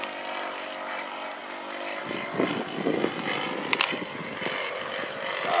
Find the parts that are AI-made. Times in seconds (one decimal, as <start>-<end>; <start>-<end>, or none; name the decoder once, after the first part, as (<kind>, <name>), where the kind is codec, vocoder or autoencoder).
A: none